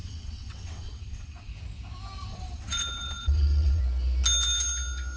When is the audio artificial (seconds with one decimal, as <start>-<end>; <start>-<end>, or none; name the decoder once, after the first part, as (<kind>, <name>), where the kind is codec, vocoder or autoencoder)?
0.0-1.5 (vocoder, WaveNeXt); 2.3-3.8